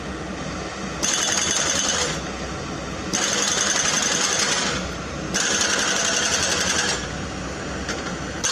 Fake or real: real